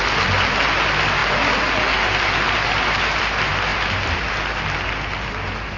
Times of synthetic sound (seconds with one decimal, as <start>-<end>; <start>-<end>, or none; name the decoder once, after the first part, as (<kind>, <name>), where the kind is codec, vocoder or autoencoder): none